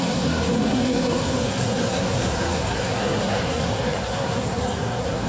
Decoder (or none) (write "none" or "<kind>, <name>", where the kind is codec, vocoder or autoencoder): codec, SNAC